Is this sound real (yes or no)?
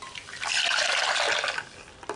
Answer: yes